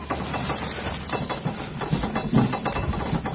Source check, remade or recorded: recorded